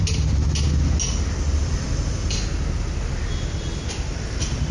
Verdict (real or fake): real